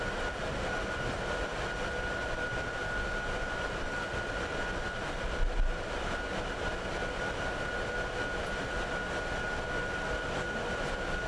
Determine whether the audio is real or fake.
real